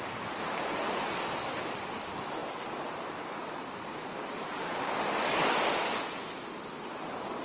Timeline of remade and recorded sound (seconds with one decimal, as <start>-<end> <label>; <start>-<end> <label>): 0.0-7.4 remade